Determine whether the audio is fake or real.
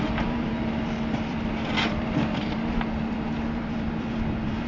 fake